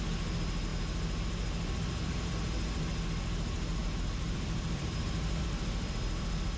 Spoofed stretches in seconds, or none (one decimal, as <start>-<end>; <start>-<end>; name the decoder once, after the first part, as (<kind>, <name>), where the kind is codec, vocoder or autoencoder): 3.8-6.6 (vocoder, BigVGAN v2)